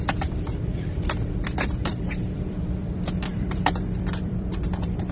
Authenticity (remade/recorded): remade